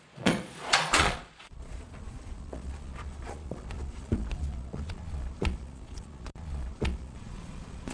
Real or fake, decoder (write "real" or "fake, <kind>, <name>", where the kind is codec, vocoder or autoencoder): fake, vocoder, Vocos